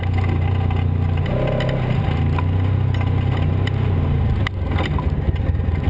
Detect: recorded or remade recorded